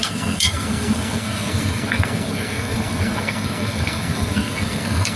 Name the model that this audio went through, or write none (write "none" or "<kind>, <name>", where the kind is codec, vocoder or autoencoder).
codec, SNAC